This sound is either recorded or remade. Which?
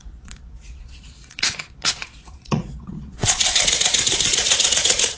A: remade